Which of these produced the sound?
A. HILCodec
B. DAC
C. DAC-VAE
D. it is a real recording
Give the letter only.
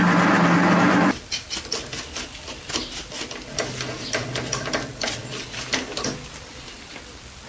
D